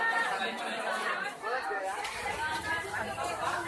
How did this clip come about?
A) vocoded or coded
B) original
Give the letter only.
A